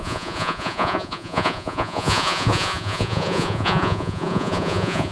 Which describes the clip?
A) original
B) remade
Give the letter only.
B